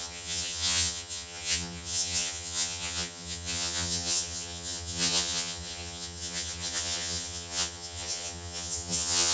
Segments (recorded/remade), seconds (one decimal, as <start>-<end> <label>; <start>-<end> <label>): 0.0-9.3 remade